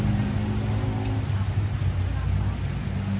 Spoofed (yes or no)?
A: no